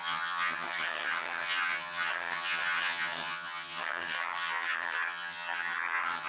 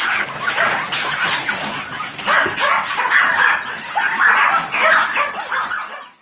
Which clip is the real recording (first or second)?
second